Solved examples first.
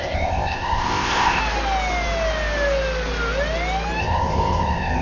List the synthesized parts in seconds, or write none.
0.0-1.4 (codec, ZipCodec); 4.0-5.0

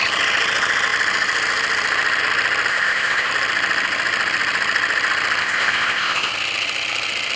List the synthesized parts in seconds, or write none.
2.7-3.3 (codec, ZipCodec); 5.4-6.3

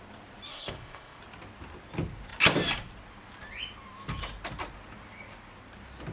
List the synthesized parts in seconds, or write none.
0.5-1.2 (codec, ZipCodec)

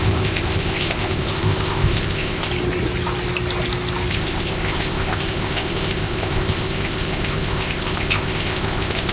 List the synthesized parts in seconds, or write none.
0.0-2.5 (codec, ZipCodec); 4.1-9.1

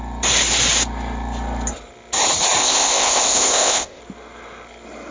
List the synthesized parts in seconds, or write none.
2.6-4.0 (codec, ZipCodec)